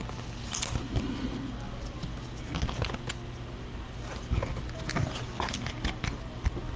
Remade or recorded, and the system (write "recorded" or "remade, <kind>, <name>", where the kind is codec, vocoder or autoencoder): recorded